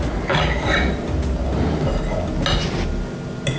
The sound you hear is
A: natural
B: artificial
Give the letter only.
A